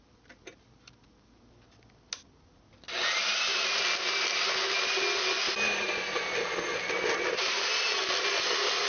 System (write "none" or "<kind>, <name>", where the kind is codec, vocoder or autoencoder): none